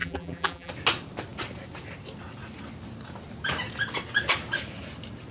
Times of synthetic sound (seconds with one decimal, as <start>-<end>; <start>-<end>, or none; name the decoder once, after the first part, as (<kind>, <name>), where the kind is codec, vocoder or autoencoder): 0.0-0.7 (vocoder, BigVGAN v2)